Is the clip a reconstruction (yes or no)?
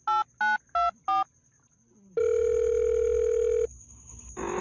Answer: no